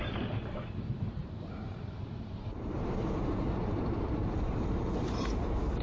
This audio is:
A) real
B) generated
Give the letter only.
B